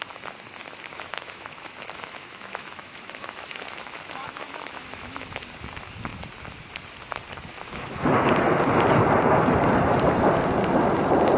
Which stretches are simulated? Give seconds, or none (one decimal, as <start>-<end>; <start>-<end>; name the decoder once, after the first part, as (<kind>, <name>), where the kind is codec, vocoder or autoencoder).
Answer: 0.9-5.4 (autoencoder, DAC-VAE); 7.5-8.1